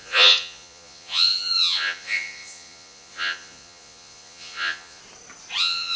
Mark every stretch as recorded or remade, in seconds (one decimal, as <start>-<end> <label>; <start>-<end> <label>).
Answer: 0.0-5.0 remade; 5.0-5.6 recorded; 5.6-6.0 remade